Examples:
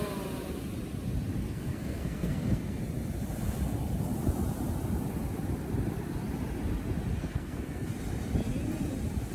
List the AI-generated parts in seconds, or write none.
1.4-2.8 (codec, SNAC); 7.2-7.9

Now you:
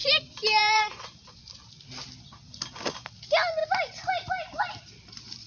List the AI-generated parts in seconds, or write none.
0.0-2.2 (vocoder, BigVGAN v2); 3.6-4.3

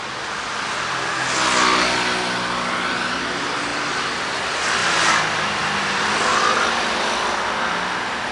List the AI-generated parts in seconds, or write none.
none

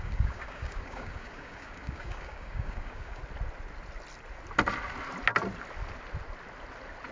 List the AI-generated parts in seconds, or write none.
0.0-3.2 (codec, DAC)

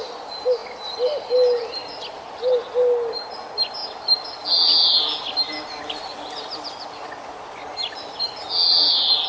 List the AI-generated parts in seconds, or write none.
none

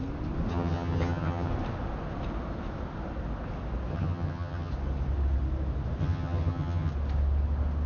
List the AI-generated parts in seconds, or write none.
0.5-1.5 (vocoder, HiFi-GAN); 3.9-4.7; 6.0-6.9